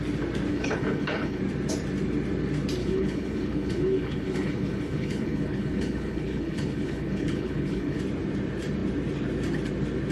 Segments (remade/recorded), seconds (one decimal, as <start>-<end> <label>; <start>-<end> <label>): 0.0-0.5 recorded; 0.5-1.4 remade; 1.4-2.8 recorded; 2.8-8.0 remade; 8.0-10.1 recorded